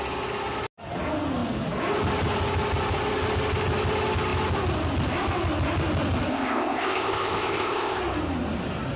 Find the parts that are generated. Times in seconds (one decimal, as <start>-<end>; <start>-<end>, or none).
6.3-8.0